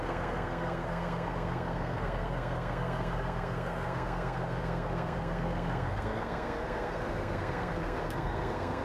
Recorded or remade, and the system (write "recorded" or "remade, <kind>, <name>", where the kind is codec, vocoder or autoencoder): remade, codec, SNAC